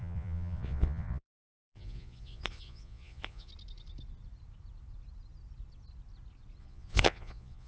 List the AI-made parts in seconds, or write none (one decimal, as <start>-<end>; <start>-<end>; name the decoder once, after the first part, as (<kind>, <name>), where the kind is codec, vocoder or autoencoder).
0.0-3.5 (vocoder, Vocos); 6.6-7.7